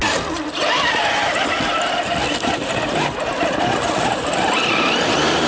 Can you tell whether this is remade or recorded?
recorded